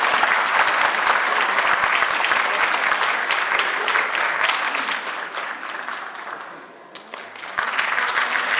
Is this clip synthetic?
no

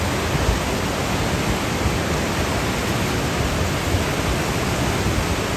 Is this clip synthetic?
no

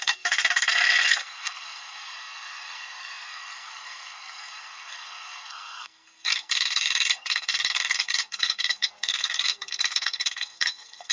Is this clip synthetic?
yes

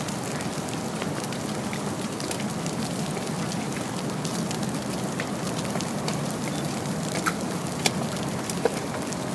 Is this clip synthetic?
no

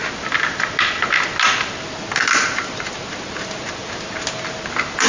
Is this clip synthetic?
no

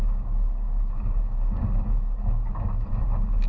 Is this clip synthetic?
no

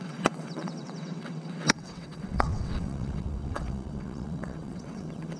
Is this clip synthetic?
yes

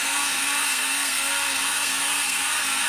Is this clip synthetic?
yes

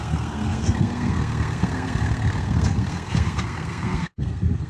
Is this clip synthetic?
yes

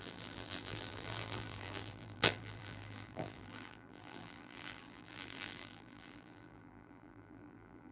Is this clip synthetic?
yes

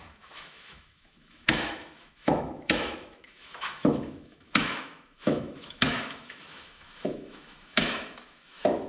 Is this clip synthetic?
yes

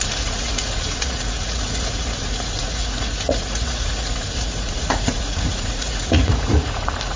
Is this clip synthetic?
yes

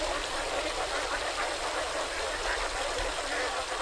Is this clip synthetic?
no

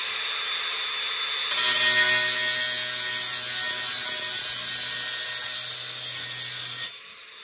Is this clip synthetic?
no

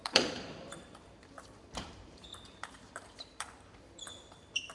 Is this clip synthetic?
yes